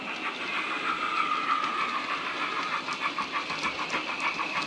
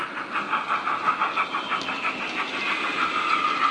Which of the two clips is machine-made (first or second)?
first